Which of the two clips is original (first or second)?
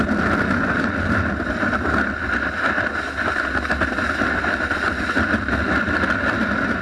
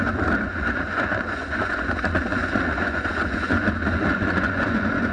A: first